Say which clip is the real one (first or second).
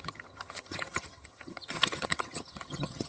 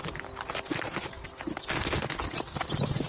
second